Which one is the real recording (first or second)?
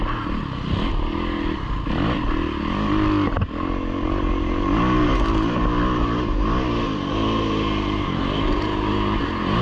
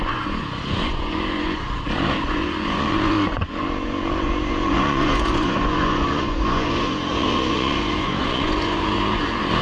first